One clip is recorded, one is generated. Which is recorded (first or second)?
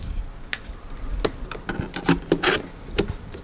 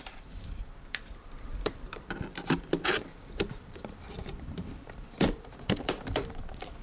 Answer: first